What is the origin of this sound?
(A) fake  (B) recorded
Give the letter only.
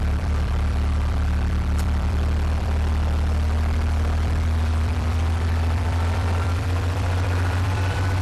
A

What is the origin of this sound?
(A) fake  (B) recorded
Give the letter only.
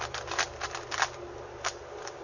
A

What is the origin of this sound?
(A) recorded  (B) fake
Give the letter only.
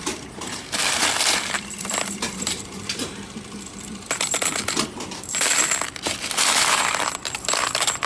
B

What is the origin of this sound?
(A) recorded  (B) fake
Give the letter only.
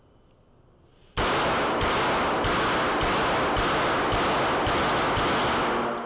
A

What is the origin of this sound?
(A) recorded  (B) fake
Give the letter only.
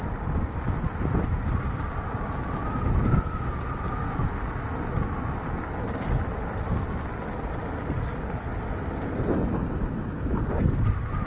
A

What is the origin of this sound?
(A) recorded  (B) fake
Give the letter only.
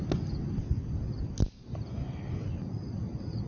A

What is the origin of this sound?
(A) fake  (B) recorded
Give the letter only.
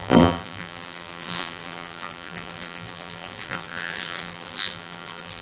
A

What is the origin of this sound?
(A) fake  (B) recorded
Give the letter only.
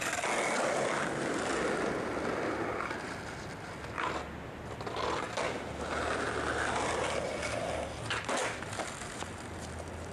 B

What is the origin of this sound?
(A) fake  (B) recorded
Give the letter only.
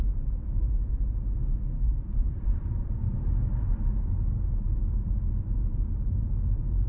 A